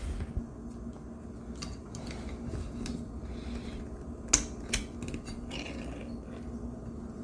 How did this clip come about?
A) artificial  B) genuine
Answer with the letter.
B